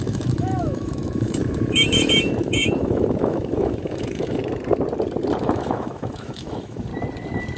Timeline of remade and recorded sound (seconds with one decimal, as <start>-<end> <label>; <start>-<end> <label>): 0.0-4.4 remade; 4.4-5.4 recorded; 5.4-6.9 remade; 6.9-7.6 recorded